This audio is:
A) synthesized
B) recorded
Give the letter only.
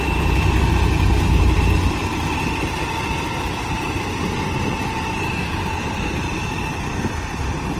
A